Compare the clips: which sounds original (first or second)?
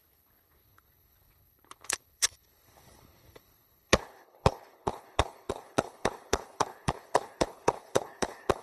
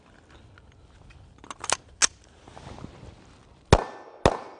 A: second